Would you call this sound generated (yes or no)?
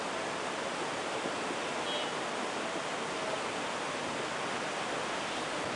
no